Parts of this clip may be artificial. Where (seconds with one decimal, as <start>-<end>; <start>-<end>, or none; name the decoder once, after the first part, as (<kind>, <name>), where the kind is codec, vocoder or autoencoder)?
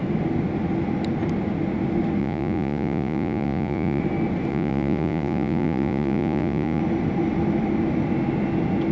2.2-4.0 (vocoder, Vocos); 4.5-6.8